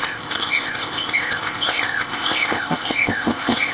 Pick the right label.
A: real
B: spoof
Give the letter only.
B